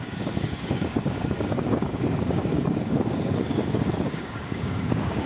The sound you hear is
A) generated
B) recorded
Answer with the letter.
A